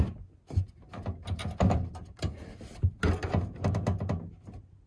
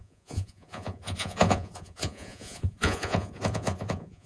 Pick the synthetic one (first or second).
second